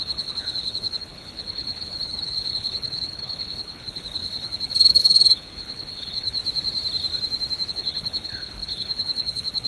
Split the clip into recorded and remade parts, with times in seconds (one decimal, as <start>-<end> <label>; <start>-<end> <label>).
0.0-6.4 remade; 6.4-7.7 recorded; 7.7-9.7 remade